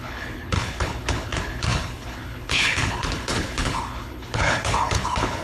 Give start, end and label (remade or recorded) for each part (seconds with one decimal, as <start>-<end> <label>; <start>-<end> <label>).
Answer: 0.0-5.4 remade